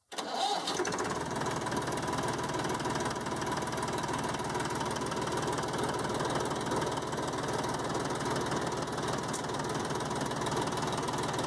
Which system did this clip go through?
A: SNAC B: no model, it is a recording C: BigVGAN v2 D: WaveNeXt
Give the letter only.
C